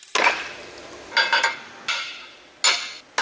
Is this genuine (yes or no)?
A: yes